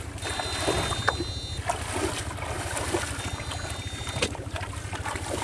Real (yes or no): yes